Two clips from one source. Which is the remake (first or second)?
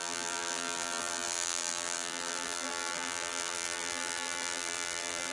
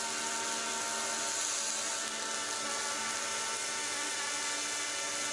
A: first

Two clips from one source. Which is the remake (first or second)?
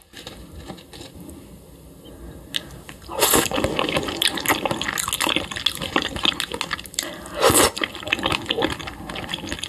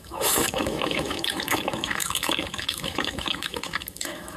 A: second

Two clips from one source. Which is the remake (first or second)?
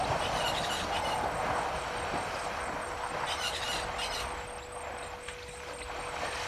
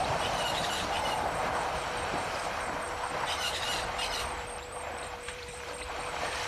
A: second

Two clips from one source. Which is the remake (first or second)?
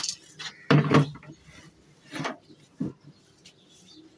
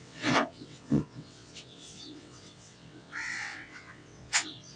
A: second